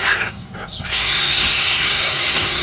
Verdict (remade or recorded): remade